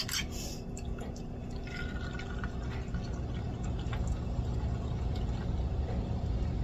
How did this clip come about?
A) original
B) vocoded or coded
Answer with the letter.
A